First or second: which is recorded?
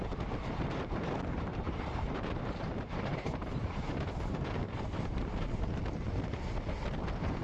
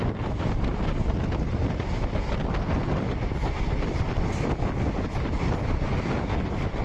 second